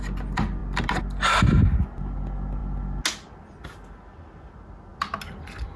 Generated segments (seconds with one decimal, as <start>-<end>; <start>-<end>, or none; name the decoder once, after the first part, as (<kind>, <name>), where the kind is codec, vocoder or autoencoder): none